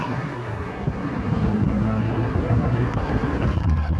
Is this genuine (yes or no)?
no